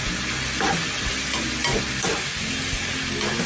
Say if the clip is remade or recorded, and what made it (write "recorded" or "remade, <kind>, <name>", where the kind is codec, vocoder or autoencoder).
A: recorded